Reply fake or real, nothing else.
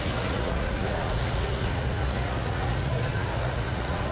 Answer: fake